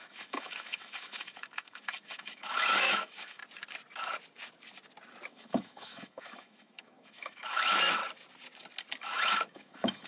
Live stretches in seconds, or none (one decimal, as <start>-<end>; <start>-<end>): 3.4-5.3; 8.0-9.0